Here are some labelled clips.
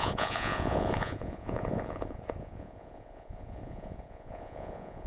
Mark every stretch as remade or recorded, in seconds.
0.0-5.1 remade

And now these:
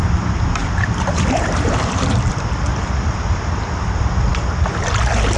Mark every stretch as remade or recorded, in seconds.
0.0-0.6 recorded; 0.6-3.8 remade; 3.8-5.4 recorded

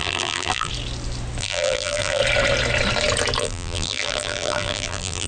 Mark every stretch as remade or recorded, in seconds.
0.0-0.7 remade; 0.7-1.4 recorded; 1.4-2.2 remade; 2.2-3.4 recorded; 3.4-5.3 remade

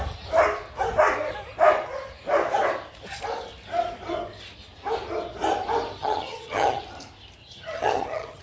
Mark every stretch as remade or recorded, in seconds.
0.0-6.0 recorded; 6.0-6.8 remade; 6.8-7.4 recorded; 7.4-8.4 remade